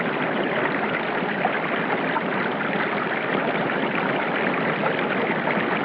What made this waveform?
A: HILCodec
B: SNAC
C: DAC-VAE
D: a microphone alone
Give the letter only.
D